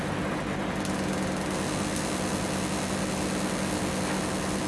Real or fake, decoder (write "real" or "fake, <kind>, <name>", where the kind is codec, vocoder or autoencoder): real